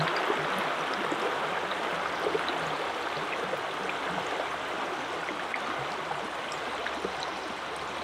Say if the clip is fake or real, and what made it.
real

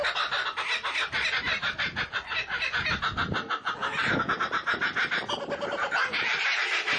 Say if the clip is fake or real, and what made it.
real